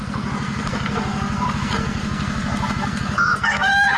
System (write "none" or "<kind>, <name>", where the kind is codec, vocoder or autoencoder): codec, SNAC